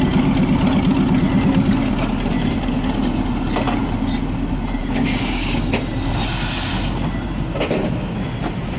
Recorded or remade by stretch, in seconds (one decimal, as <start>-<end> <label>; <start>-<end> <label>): 0.0-4.8 recorded; 4.8-5.7 remade; 5.7-8.8 recorded